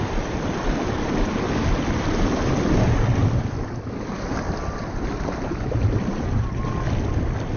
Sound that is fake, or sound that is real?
real